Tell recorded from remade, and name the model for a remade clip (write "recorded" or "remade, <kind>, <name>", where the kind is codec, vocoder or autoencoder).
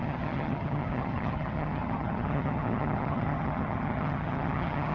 remade, vocoder, HiFi-GAN